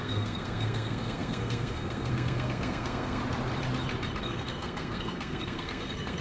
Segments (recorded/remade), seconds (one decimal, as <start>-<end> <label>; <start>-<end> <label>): 0.0-3.2 remade; 3.2-4.2 recorded; 4.2-6.2 remade